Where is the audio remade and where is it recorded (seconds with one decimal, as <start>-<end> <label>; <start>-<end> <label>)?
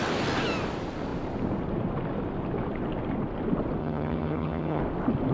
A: 0.0-3.8 recorded; 3.8-4.8 remade; 4.8-5.3 recorded